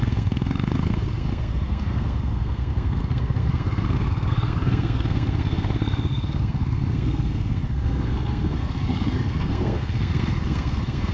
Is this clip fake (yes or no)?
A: yes